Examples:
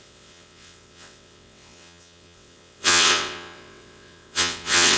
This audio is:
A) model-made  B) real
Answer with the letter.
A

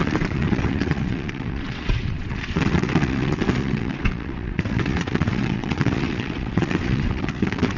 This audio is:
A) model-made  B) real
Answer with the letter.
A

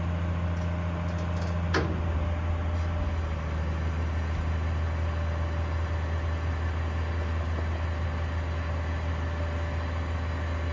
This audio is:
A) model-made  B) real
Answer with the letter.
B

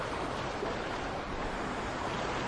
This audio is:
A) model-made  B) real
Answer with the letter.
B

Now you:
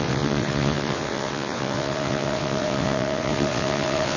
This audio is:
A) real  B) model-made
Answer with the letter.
B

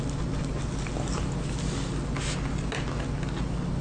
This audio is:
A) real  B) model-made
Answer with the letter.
A